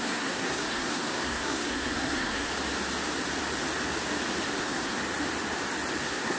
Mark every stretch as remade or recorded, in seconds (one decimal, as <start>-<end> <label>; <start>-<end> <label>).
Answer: 0.0-2.5 remade; 2.5-4.6 recorded; 4.6-5.0 remade; 5.0-6.0 recorded; 6.0-6.4 remade